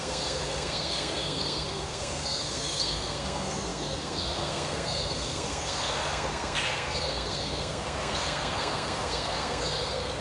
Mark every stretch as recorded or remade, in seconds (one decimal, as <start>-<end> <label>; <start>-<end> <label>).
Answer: 0.0-10.2 remade